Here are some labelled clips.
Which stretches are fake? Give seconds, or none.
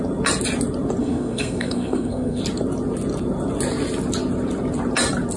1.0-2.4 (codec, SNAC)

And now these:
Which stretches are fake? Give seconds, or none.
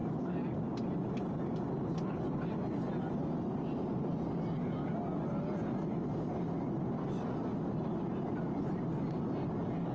none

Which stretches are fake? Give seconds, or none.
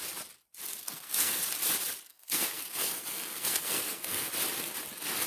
0.8-1.5 (codec, SNAC); 2.1-4.3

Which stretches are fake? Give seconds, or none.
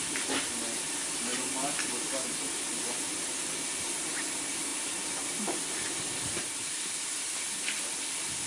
none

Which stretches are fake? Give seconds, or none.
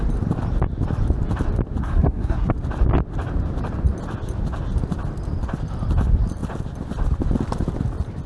1.8-2.5 (codec, SNAC)